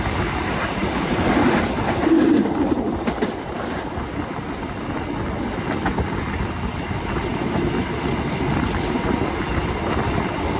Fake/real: real